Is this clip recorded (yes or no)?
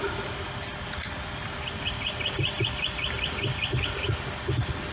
yes